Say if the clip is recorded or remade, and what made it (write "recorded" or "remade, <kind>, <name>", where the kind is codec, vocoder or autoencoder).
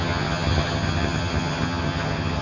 remade, vocoder, HiFi-GAN